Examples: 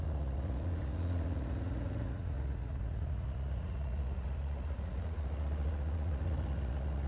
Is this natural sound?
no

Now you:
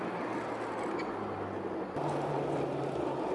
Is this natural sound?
yes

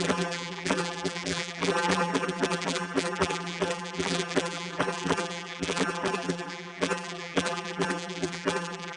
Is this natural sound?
no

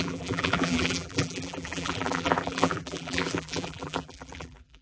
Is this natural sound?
no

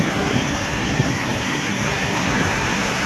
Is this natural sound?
no